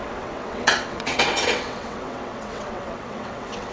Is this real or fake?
fake